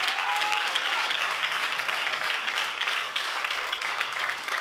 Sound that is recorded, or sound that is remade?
remade